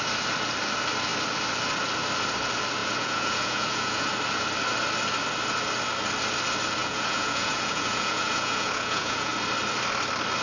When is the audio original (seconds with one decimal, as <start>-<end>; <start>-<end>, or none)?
0.0-2.8; 4.1-6.8; 9.3-10.4